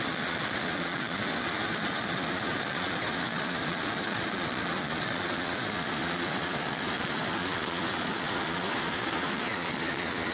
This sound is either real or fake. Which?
fake